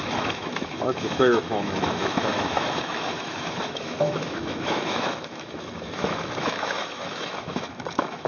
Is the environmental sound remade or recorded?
remade